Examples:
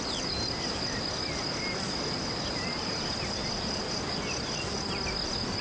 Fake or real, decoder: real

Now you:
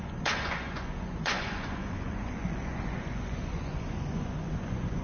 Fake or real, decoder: fake, vocoder, Vocos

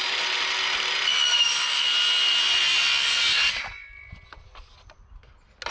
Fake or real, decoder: real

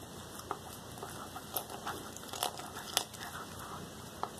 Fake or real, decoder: real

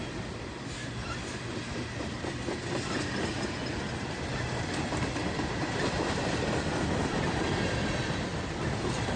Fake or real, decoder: real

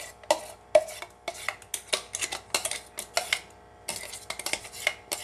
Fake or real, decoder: real